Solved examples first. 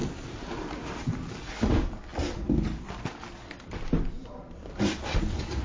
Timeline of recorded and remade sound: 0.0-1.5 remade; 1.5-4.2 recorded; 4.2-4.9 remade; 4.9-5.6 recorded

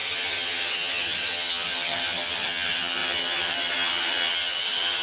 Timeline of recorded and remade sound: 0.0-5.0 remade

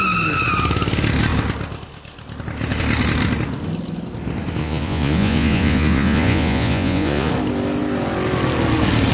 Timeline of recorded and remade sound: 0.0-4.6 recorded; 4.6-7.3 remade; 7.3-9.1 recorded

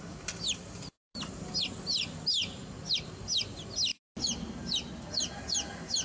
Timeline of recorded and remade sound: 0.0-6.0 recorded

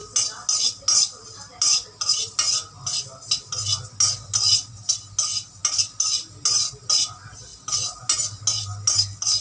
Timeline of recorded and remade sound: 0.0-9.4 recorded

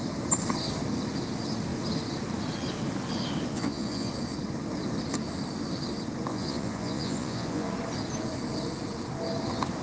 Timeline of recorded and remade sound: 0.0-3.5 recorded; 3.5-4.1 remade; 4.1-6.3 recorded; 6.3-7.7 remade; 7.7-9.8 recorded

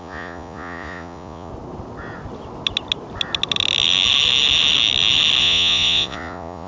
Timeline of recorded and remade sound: 0.0-1.5 remade; 1.5-5.4 recorded; 5.4-6.7 remade

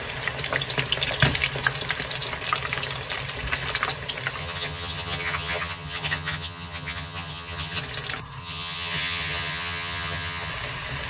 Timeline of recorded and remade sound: 0.0-4.4 recorded; 4.4-7.8 remade; 7.8-8.4 recorded; 8.4-10.5 remade; 10.5-11.1 recorded